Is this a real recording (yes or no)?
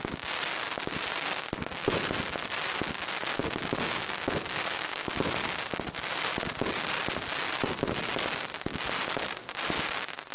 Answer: yes